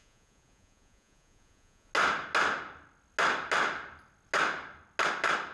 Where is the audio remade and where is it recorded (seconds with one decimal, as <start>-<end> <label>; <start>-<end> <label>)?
0.0-1.9 remade; 1.9-5.5 recorded